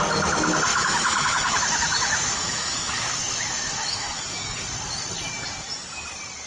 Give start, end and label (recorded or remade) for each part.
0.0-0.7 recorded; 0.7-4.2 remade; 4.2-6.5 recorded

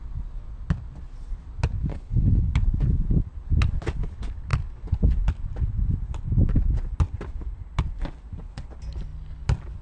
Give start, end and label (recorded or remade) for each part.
0.0-1.9 recorded; 1.9-2.5 remade; 2.5-9.8 recorded